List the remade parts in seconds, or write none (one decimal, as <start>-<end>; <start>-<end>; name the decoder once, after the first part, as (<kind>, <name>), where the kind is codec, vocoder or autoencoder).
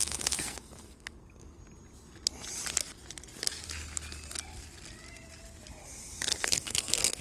0.0-1.6 (codec, SNAC); 6.3-7.2